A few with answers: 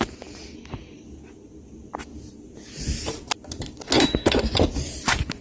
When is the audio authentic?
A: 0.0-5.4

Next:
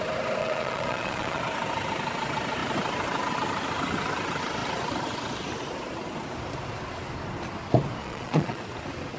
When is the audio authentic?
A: 0.0-0.4; 1.4-8.0; 8.6-9.2

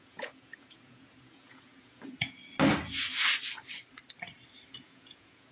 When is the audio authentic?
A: 2.4-4.8

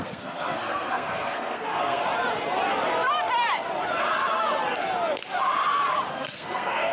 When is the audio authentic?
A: 2.0-6.1

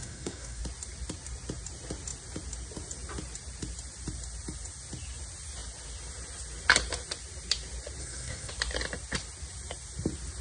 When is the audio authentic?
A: 0.6-8.0; 8.5-10.4